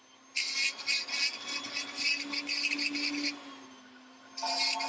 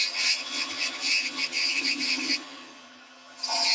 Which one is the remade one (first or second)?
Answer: second